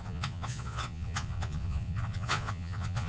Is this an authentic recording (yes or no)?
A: no